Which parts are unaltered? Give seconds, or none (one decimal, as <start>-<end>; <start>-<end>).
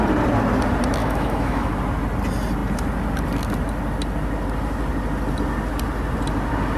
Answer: 0.0-1.0; 1.7-6.8